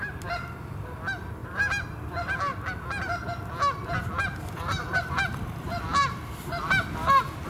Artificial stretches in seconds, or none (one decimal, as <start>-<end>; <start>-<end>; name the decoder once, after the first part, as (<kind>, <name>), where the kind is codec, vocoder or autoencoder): 1.4-2.0 (vocoder, BigVGAN v2)

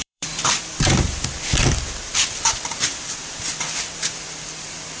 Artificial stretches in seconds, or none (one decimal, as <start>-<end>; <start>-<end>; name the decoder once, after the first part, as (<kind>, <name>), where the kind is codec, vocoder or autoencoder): 0.0-1.3 (vocoder, BigVGAN v2); 2.1-3.0

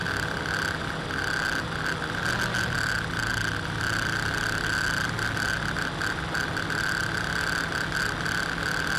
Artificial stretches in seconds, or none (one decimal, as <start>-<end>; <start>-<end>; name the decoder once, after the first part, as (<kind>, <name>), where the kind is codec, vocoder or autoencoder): none

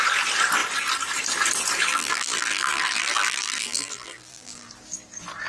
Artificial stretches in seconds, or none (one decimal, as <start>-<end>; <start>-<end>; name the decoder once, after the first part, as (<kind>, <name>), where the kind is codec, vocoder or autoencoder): 1.9-4.7 (vocoder, BigVGAN v2)

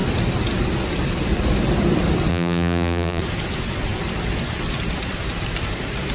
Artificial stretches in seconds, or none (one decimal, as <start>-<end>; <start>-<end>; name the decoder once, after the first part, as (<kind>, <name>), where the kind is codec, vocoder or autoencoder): 2.3-3.2 (vocoder, BigVGAN v2)

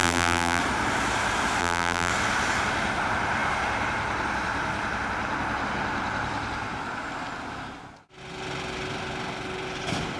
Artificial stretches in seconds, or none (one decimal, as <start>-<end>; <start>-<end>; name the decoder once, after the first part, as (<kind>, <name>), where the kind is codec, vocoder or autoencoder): 0.0-0.6 (vocoder, BigVGAN v2); 1.6-2.1